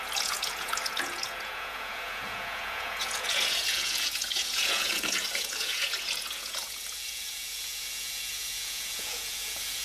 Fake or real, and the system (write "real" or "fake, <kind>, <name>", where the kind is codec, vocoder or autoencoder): fake, vocoder, Vocos